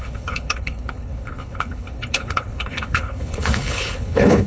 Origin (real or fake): fake